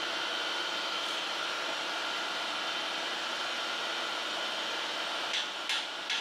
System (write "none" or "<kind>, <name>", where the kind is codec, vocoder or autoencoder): none